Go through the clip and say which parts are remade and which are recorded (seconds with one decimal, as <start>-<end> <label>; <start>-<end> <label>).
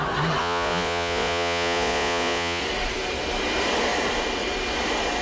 0.0-0.4 recorded; 0.4-2.6 remade; 2.6-5.2 recorded